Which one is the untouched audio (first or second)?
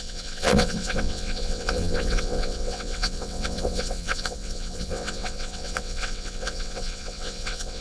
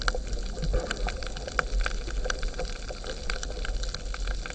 second